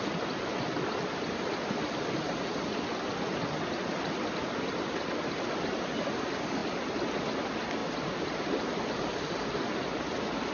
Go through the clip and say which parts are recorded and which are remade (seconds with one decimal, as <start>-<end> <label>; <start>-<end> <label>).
0.0-6.6 remade; 6.6-7.2 recorded; 7.2-10.5 remade